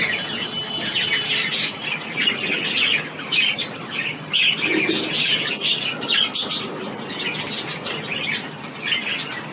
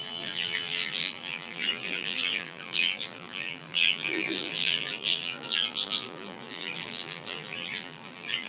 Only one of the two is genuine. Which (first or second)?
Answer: first